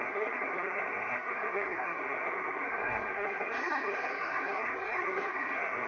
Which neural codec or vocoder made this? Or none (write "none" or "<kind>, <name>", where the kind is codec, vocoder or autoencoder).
codec, SNAC